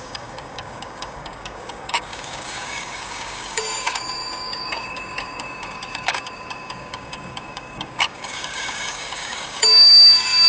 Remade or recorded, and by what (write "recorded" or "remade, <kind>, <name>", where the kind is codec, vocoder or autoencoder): remade, codec, DAC